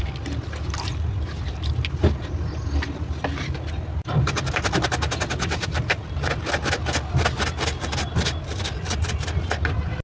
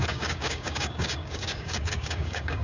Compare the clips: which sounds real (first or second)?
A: first